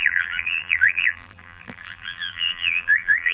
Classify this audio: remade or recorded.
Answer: remade